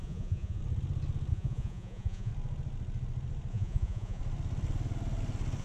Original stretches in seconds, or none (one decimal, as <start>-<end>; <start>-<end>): 0.6-1.3; 2.3-3.5; 4.2-5.6